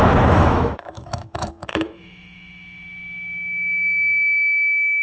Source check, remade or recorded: remade